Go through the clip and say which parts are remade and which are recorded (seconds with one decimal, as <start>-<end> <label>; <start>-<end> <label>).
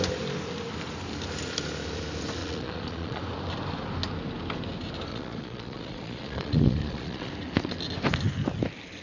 0.0-2.4 recorded; 2.4-3.2 remade; 3.2-5.1 recorded; 5.1-7.3 remade; 7.3-9.0 recorded